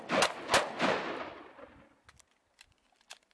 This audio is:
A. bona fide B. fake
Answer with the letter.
A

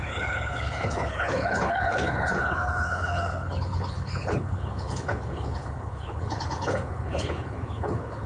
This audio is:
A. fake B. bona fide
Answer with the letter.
A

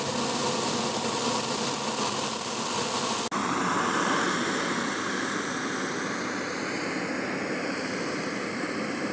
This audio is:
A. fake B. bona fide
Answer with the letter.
B